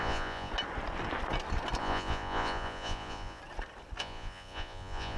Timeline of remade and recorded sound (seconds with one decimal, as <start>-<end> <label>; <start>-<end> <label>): 0.0-0.5 remade; 0.5-1.8 recorded; 1.8-3.4 remade; 3.4-4.0 recorded; 4.0-5.2 remade